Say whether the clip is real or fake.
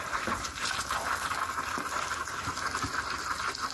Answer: real